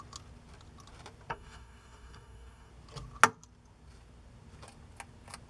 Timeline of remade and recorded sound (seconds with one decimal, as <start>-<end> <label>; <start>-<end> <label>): 0.0-1.3 recorded; 1.3-2.7 remade; 2.7-5.5 recorded